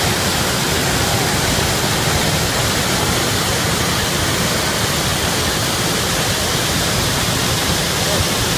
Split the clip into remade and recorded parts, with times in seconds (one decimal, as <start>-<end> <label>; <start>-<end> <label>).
0.0-5.1 recorded; 5.1-7.2 remade; 7.2-8.6 recorded